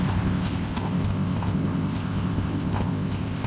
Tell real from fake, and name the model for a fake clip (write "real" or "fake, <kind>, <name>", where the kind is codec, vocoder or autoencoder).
fake, codec, ZipCodec